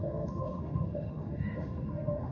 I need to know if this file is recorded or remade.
remade